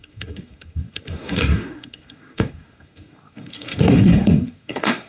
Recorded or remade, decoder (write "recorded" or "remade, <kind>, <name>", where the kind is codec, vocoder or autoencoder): remade, codec, SNAC